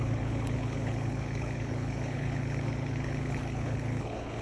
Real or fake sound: fake